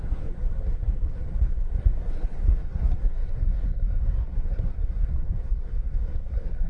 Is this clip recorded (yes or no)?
no